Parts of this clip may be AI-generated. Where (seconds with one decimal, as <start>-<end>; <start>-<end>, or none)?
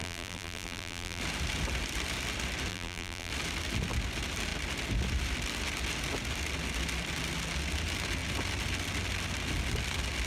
0.0-1.2; 2.7-3.3